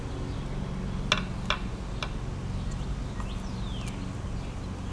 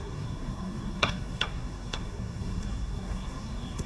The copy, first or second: second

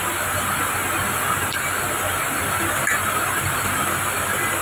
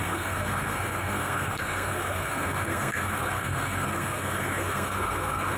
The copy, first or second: second